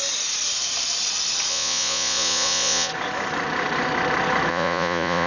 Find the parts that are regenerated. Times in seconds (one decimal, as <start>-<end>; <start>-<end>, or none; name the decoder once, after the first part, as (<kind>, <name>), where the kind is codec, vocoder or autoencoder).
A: 1.5-2.9 (vocoder, Vocos); 4.5-5.3